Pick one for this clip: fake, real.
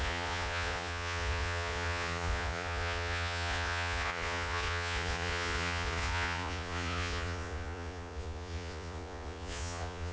fake